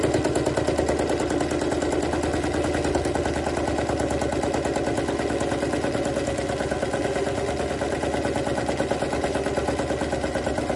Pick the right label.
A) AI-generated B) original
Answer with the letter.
B